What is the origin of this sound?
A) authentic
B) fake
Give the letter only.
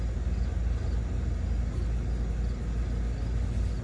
A